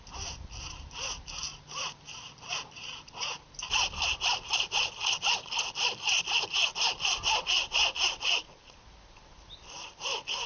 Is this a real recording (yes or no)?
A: yes